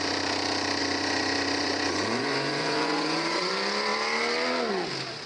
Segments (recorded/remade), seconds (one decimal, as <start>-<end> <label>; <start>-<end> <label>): 0.0-0.8 recorded; 0.8-3.5 remade; 3.5-5.3 recorded